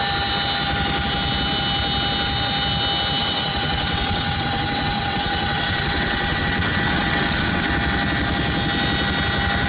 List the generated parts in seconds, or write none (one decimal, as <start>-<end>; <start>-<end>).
3.2-7.7